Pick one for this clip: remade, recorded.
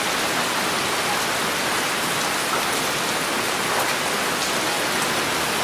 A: recorded